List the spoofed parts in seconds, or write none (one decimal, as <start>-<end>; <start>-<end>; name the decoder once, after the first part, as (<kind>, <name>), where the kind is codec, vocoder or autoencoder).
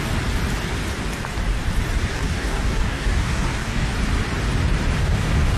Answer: 2.1-3.9 (codec, DAC); 5.0-5.6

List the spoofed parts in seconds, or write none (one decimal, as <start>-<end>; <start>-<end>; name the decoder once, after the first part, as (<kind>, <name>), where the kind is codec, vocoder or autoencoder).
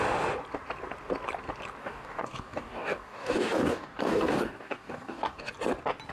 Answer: 1.8-5.5 (codec, DAC)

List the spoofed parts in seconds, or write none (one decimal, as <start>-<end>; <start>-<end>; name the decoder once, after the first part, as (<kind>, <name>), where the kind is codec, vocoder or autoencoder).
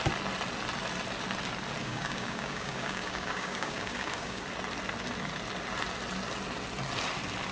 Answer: 1.8-4.4 (codec, DAC)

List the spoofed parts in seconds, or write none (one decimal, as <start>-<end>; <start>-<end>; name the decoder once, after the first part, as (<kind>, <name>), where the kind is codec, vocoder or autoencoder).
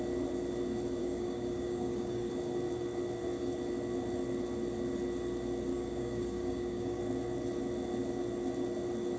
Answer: 1.0-2.3 (codec, DAC); 5.7-7.0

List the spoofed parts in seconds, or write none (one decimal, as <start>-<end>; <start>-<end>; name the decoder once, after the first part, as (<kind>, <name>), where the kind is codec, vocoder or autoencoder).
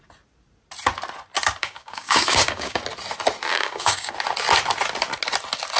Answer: 1.6-2.8 (codec, DAC); 3.5-4.1